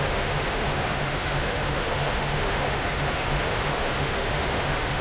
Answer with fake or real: fake